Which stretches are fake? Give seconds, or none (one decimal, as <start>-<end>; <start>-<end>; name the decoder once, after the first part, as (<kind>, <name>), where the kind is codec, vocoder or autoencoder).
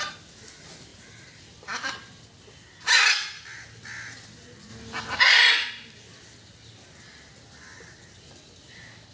0.9-2.2 (vocoder, BigVGAN v2)